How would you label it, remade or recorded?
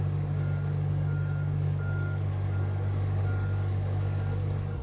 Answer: remade